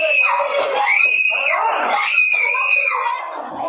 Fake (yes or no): yes